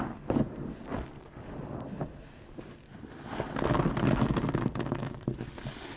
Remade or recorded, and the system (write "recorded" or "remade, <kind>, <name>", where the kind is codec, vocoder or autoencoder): recorded